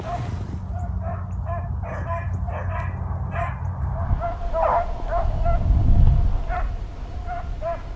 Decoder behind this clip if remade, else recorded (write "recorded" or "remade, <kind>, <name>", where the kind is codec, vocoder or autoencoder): recorded